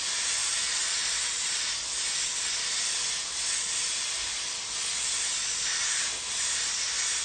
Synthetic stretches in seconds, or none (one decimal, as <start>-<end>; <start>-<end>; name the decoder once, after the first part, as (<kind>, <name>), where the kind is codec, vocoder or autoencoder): none